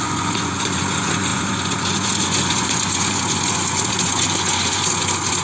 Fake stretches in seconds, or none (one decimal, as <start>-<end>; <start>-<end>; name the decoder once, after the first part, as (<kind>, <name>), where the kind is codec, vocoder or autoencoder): 0.0-5.4 (vocoder, Vocos)